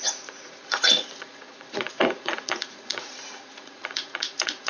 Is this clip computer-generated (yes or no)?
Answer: yes